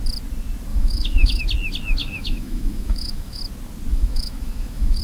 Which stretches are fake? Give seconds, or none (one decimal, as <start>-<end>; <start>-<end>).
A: 0.7-1.4; 2.0-3.4; 3.9-5.0